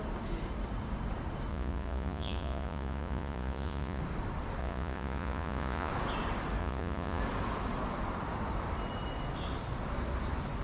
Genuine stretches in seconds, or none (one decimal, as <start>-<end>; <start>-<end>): 0.0-1.5; 4.0-4.6; 5.9-6.6; 7.2-10.6